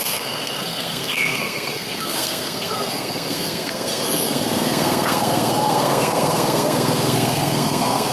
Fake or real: fake